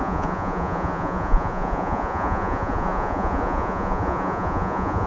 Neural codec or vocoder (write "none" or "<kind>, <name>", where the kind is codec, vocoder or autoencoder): vocoder, Vocos